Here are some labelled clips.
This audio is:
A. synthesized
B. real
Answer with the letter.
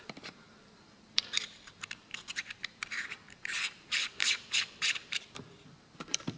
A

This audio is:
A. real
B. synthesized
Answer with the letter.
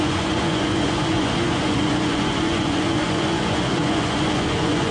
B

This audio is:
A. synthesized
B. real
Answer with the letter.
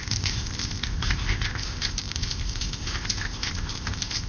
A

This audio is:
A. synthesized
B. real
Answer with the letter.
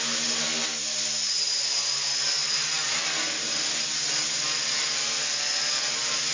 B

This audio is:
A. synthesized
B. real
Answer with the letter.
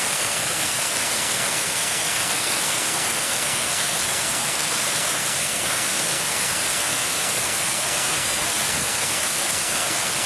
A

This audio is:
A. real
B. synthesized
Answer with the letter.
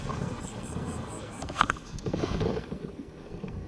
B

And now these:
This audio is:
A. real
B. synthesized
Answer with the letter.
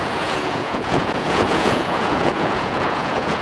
B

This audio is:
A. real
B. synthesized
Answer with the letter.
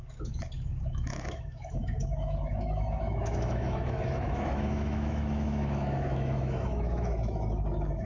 B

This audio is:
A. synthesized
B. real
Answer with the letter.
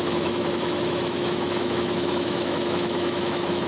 A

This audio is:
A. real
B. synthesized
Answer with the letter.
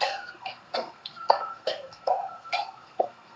B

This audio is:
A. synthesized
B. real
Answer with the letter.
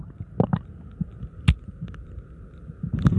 B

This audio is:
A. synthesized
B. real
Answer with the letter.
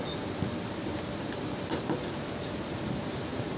A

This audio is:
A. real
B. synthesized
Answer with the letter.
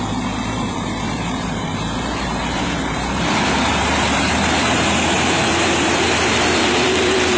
B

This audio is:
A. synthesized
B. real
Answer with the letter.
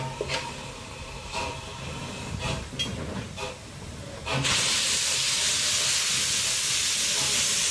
B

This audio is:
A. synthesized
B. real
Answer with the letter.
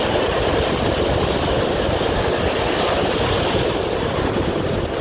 B